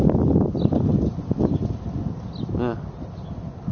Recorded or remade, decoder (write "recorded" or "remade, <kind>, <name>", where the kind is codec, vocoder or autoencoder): recorded